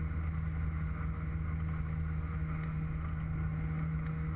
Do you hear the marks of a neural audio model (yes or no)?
no